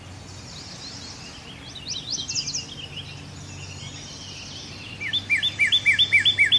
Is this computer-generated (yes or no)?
no